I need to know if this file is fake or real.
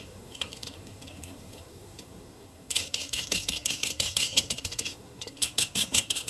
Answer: fake